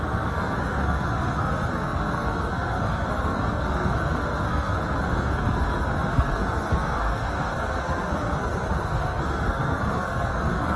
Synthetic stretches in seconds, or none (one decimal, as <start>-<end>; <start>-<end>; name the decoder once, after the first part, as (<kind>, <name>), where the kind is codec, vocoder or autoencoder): 0.0-10.8 (codec, SNAC)